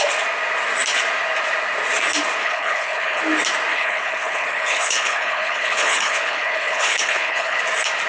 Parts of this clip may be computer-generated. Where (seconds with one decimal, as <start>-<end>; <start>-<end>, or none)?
2.4-3.2; 3.7-7.6